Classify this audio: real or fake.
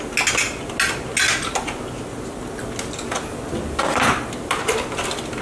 real